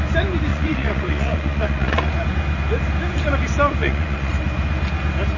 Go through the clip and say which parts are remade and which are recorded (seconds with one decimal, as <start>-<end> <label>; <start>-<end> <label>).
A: 0.0-0.5 recorded; 0.5-2.1 remade; 2.1-3.8 recorded; 3.8-4.3 remade; 4.3-5.4 recorded